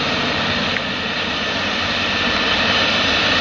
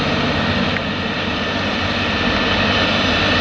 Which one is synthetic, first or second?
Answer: first